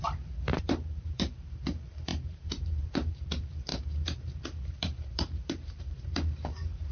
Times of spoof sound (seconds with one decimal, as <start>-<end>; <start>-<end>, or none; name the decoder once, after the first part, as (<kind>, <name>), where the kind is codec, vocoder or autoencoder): 0.0-6.9 (vocoder, BigVGAN v2)